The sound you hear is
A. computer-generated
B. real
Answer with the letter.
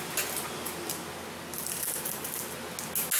B